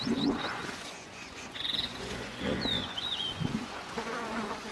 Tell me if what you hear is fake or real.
fake